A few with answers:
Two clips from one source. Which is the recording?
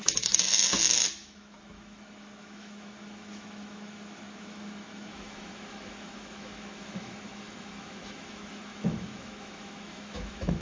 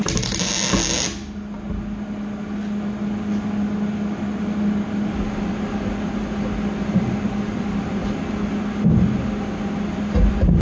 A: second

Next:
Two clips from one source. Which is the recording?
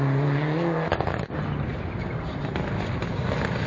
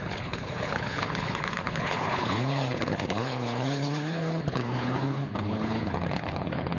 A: first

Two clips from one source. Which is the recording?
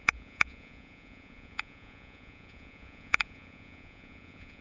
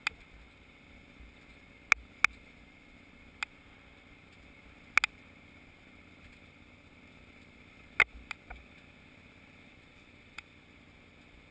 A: second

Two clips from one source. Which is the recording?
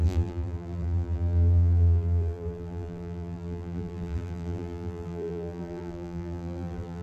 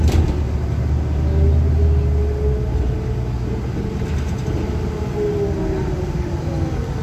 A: second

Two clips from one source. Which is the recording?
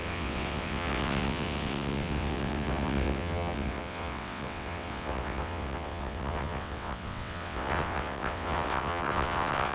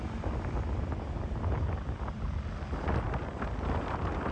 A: second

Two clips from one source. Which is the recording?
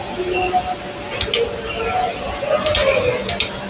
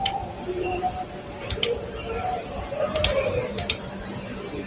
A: first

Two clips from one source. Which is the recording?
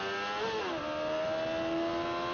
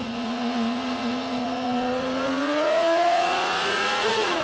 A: first